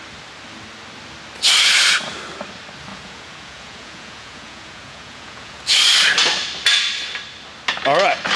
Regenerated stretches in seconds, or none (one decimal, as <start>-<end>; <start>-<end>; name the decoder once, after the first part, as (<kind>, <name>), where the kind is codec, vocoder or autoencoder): 2.9-5.6 (vocoder, Vocos)

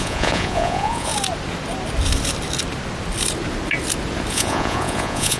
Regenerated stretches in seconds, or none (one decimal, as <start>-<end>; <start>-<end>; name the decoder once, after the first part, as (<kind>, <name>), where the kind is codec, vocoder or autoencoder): 0.0-1.1 (vocoder, Vocos); 4.3-5.4

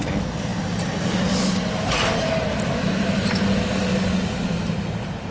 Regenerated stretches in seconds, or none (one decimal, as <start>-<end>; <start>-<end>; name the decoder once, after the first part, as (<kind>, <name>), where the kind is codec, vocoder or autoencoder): none

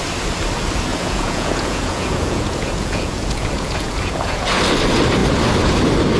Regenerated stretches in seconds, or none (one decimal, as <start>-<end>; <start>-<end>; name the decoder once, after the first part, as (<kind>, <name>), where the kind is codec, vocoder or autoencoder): 0.9-4.6 (vocoder, Vocos)

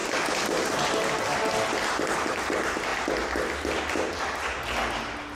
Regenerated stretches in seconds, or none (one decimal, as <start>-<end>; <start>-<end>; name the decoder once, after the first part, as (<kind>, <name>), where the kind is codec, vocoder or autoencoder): none

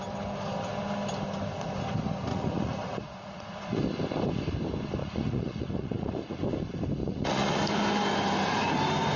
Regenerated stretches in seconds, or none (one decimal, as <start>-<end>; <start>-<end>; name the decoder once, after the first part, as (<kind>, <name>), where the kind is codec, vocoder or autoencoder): 2.3-3.8 (vocoder, Vocos); 5.0-6.4; 7.0-7.6